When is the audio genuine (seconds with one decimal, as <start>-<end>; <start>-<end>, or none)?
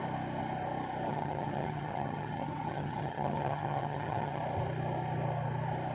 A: 0.0-1.1; 4.4-5.9